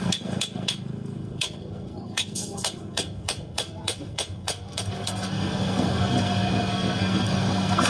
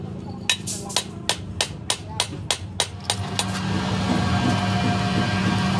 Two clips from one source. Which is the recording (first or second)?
second